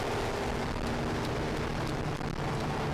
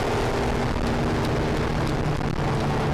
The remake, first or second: first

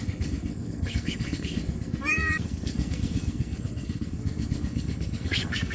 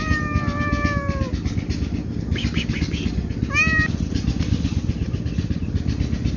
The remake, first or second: first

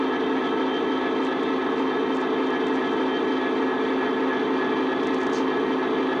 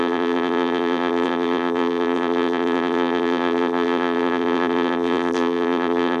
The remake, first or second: second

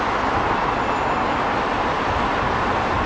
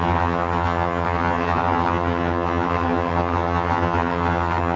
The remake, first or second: second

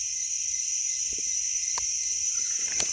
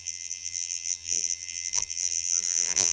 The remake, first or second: second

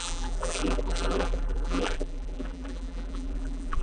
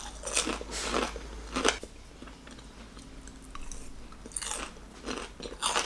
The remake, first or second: first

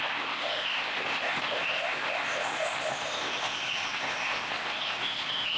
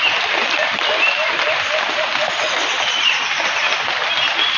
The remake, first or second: first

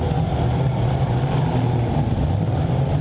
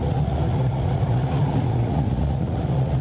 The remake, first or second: second